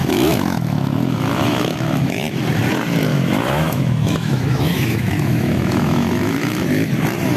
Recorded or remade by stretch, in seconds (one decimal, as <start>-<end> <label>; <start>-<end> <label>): 0.0-2.3 remade; 2.3-3.1 recorded; 3.1-6.9 remade; 6.9-7.4 recorded